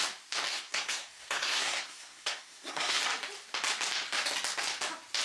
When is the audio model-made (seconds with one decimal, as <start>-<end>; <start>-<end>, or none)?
0.5-3.0